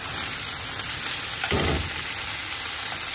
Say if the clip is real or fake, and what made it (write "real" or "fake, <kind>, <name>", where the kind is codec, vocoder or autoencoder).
real